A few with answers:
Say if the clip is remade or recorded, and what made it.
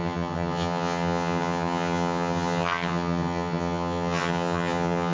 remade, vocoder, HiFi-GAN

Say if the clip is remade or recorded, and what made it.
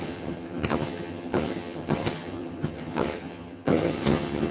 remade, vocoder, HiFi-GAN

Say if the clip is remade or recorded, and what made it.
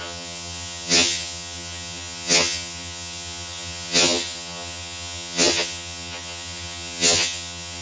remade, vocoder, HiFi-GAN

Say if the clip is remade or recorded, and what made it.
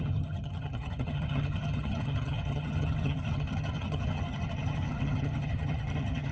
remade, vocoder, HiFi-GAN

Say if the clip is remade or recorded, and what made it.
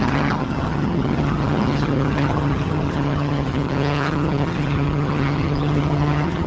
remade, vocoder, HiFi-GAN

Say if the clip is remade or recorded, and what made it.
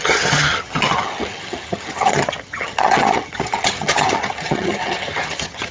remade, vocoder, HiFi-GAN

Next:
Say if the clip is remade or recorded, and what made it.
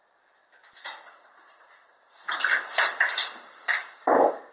recorded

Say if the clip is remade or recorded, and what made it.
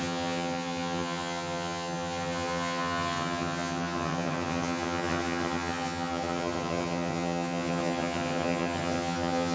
remade, vocoder, HiFi-GAN